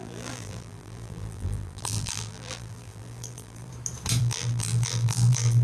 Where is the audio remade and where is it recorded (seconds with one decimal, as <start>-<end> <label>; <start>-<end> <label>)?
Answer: 0.0-3.7 remade; 3.7-4.2 recorded; 4.2-5.6 remade